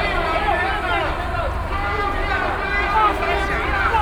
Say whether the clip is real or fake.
real